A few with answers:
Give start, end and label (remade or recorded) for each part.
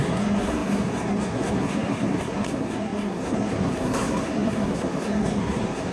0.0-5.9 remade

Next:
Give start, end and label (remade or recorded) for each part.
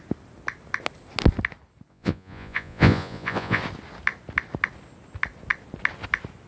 0.0-1.9 recorded; 1.9-3.6 remade; 3.6-6.5 recorded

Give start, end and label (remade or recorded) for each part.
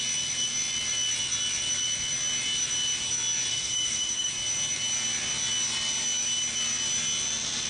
0.0-3.5 recorded; 3.5-4.3 remade; 4.3-7.7 recorded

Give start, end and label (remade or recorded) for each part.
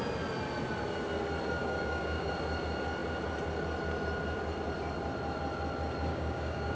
0.0-1.6 recorded; 1.6-2.3 remade; 2.3-6.1 recorded; 6.1-6.8 remade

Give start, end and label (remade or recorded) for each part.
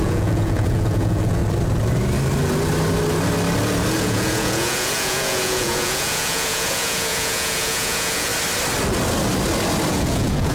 0.0-1.4 remade; 1.4-4.0 recorded; 4.0-8.3 remade; 8.3-9.9 recorded; 9.9-10.5 remade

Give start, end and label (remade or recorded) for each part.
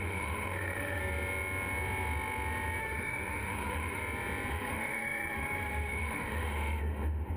0.0-1.0 remade; 1.0-2.8 recorded; 2.8-4.0 remade; 4.0-4.5 recorded; 4.5-7.4 remade